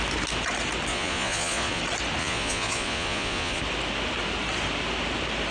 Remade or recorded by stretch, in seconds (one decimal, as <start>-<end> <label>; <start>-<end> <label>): 0.0-0.9 recorded; 0.9-1.8 remade; 1.8-2.2 recorded; 2.2-3.6 remade; 3.6-5.5 recorded